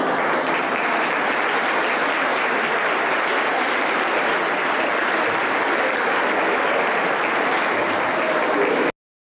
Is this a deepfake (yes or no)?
no